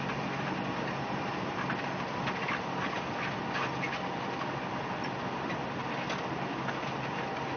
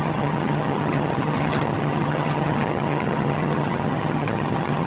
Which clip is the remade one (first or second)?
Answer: second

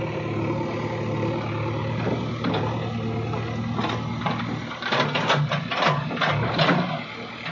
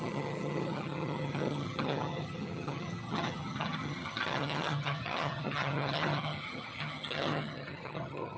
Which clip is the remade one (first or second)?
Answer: second